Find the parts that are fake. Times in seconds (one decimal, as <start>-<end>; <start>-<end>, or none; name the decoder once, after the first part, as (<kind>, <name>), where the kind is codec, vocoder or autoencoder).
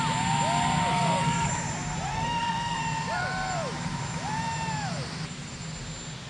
0.9-1.5 (codec, SNAC); 2.1-2.8